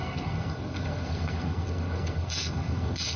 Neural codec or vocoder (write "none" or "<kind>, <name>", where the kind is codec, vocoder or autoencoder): codec, SNAC